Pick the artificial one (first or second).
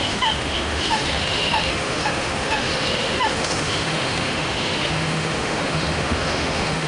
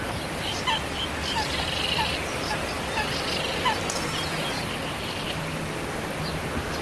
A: first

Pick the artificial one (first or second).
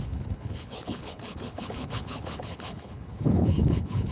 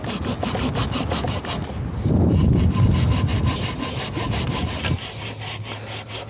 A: first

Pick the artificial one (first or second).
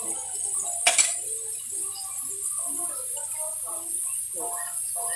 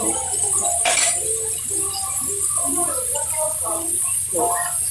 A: second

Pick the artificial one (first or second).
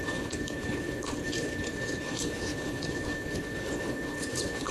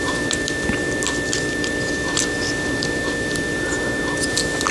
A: first